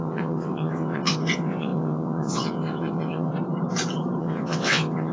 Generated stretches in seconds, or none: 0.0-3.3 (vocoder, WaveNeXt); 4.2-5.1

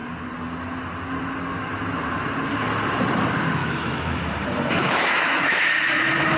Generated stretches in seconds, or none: 3.6-4.2 (autoencoder, DAC-VAE); 4.8-5.6

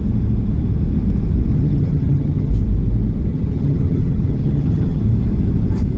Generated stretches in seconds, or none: 1.5-2.5 (vocoder, HiFi-GAN); 3.3-5.0

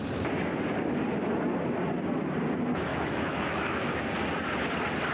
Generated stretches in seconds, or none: 2.9-4.0 (autoencoder, DAC-VAE)

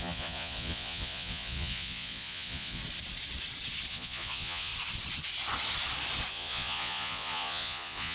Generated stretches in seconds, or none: 0.0-2.8 (vocoder, Vocos); 3.9-4.7; 6.3-8.1